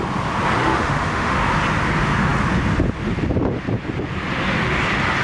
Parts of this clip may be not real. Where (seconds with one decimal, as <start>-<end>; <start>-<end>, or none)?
0.6-1.5